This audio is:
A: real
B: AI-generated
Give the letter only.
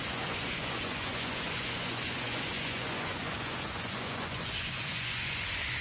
B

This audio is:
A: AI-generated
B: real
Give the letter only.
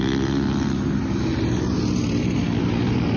B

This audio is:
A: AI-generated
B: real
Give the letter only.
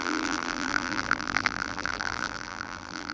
A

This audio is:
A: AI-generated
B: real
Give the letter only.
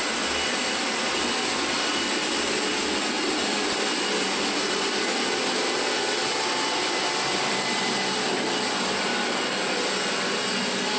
B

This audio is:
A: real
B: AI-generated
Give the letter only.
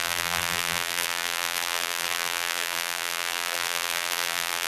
B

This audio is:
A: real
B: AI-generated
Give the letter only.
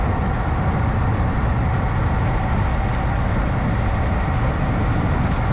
A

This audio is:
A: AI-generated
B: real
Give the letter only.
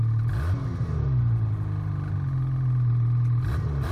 B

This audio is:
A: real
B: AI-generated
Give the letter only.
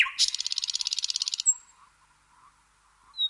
A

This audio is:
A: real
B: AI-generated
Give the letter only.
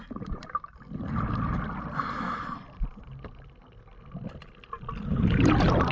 A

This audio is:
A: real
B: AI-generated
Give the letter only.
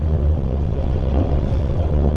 B